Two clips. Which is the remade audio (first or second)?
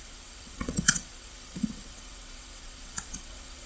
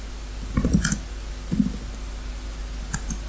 first